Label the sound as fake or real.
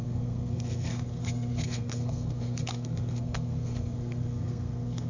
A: fake